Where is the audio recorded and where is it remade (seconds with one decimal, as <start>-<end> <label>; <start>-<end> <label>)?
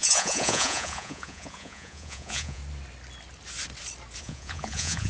0.0-2.6 remade; 2.6-4.2 recorded; 4.2-5.1 remade